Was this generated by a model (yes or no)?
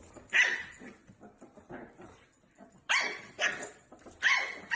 no